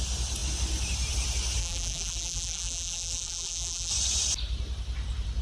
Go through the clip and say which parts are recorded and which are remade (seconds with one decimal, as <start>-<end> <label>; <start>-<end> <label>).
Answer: 0.0-1.6 recorded; 1.6-3.9 remade; 3.9-5.4 recorded